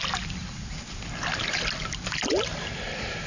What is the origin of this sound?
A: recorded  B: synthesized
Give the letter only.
A